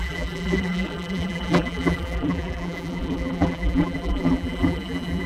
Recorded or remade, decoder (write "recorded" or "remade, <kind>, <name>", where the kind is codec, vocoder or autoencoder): remade, vocoder, BigVGAN v2